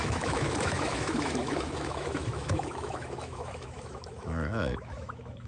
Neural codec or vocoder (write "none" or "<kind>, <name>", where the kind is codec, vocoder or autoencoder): autoencoder, DAC-VAE